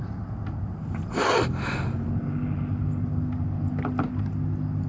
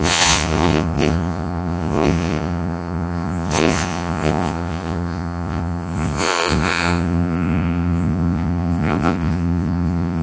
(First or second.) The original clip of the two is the first